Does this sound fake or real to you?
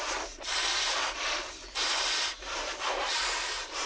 fake